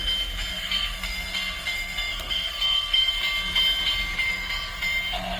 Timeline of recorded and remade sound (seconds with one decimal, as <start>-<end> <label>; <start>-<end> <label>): 0.0-0.5 recorded; 0.5-3.1 remade; 3.1-5.4 recorded